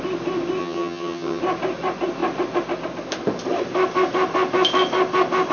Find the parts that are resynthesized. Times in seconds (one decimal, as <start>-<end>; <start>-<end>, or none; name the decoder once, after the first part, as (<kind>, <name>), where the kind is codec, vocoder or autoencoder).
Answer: 0.6-1.4 (vocoder, HiFi-GAN)